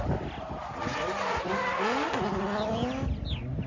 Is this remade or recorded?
recorded